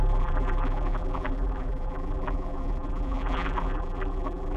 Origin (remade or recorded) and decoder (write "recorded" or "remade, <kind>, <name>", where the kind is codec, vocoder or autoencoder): remade, vocoder, BigVGAN v2